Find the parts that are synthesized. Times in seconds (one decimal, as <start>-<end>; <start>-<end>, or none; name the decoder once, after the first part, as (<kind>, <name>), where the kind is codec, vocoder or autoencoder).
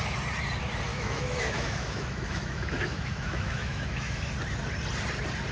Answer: 0.9-4.2 (autoencoder, DAC-VAE)